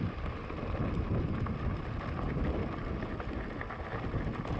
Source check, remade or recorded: recorded